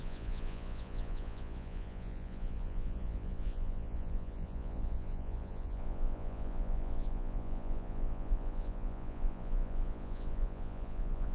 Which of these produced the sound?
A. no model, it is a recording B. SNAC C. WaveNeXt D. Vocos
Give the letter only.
D